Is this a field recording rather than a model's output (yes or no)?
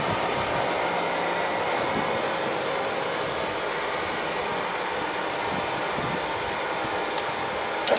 yes